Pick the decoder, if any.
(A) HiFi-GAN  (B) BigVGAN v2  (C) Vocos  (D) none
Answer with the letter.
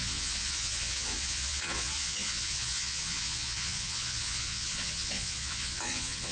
C